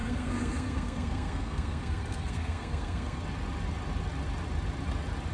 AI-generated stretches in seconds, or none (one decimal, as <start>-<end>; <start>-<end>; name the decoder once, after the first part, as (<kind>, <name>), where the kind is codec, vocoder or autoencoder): 0.0-3.2 (codec, SNAC)